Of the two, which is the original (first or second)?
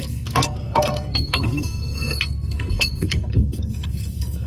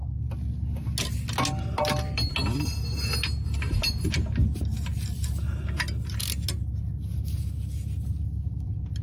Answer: second